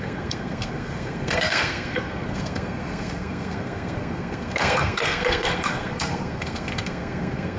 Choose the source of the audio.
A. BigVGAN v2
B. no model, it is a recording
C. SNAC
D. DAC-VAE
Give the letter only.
C